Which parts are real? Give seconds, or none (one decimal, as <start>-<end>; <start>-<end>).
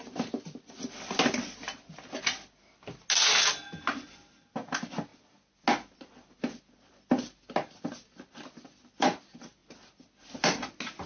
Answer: 0.0-11.1